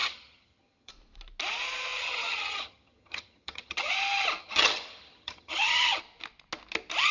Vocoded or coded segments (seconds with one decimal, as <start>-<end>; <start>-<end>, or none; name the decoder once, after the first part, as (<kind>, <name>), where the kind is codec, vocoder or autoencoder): 0.0-0.9 (vocoder, HiFi-GAN); 2.0-3.9; 4.4-6.0